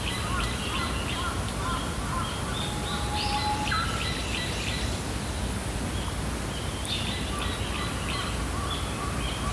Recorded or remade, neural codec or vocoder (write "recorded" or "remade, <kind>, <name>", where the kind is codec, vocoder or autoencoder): recorded